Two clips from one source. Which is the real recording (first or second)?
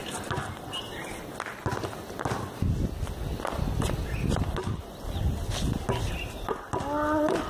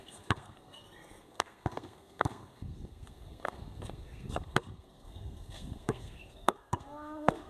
first